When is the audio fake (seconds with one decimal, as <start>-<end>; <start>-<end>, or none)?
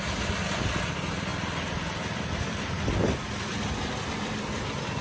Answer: none